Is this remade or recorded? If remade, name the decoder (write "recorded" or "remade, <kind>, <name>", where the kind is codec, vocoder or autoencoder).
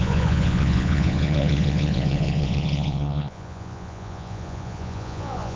remade, vocoder, Vocos